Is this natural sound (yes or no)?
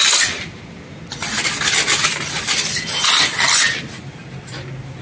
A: yes